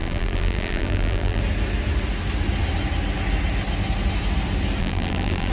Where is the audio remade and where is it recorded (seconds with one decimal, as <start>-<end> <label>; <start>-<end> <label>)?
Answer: 0.0-1.4 remade; 1.4-4.8 recorded; 4.8-5.5 remade